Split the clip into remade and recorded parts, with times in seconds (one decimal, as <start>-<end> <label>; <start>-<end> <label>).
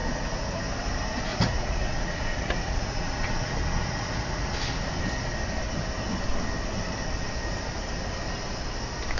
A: 0.0-0.6 remade; 0.6-1.3 recorded; 1.3-4.5 remade; 4.5-9.2 recorded